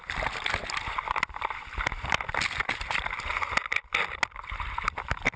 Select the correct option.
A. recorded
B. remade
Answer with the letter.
A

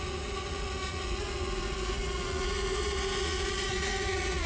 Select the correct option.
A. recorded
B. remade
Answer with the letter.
B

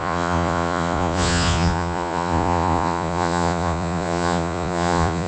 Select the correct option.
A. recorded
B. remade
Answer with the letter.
B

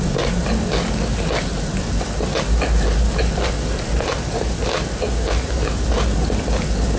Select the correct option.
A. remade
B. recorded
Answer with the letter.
B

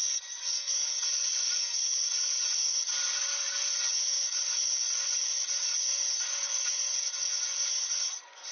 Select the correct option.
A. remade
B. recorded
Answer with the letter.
A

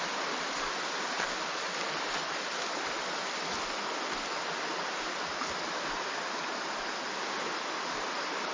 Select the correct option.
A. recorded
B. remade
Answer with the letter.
A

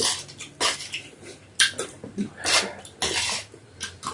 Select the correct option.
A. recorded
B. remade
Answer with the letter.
A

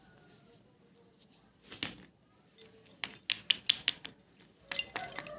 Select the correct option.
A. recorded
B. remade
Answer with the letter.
A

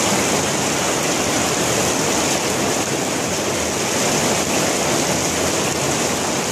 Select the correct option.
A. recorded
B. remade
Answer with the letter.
A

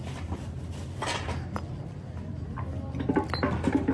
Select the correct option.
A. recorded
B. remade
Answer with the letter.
A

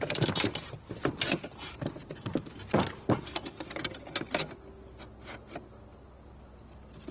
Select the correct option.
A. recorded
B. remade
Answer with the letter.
A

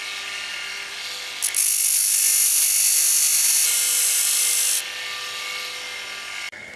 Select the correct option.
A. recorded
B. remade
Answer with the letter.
A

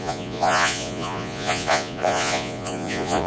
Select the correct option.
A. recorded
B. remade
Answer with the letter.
B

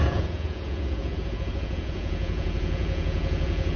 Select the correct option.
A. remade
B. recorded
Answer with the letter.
A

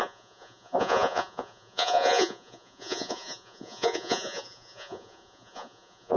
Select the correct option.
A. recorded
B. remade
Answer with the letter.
B